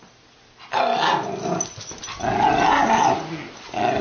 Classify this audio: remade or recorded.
recorded